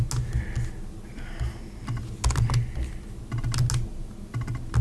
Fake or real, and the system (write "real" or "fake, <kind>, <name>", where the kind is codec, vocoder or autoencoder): real